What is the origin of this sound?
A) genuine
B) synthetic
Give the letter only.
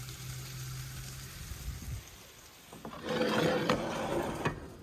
A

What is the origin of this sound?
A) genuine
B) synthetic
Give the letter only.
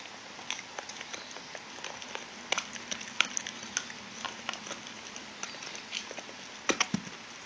A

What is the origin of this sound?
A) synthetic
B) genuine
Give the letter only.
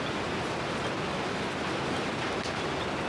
B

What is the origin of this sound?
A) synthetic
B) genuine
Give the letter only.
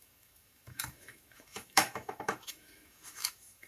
A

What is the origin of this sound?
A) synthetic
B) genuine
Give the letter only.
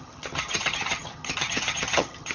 A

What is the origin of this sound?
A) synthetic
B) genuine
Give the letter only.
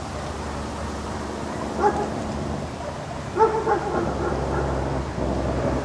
B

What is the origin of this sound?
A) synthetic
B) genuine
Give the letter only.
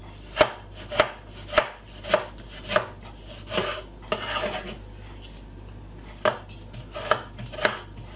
B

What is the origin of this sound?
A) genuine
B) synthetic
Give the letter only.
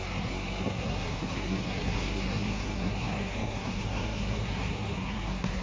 B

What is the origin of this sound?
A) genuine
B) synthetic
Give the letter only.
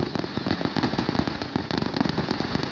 B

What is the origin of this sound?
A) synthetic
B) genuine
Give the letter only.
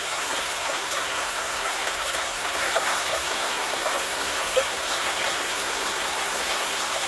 A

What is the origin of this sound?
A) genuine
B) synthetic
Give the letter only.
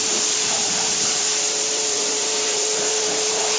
B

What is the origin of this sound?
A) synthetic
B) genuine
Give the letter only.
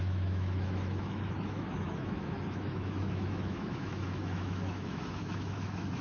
A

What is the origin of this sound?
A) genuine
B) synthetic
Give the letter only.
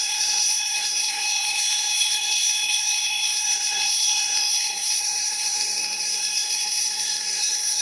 B